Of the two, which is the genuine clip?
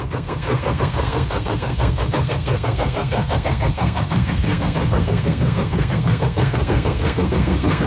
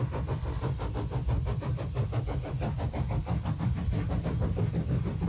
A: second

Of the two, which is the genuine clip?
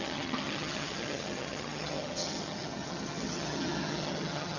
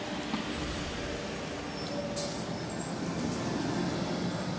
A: second